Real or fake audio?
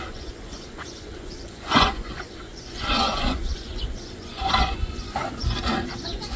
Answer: fake